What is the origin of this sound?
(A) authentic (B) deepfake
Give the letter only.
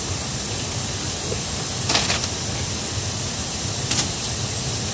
A